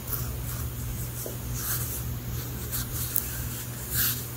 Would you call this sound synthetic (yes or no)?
no